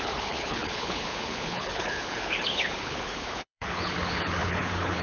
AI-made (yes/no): yes